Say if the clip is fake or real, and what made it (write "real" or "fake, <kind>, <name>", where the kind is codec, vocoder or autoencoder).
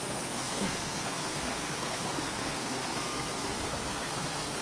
fake, codec, SNAC